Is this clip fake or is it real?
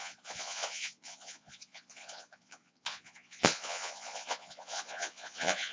fake